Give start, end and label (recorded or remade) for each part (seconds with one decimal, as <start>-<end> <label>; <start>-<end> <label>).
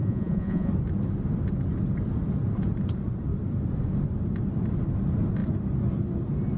0.0-0.7 remade; 0.7-6.6 recorded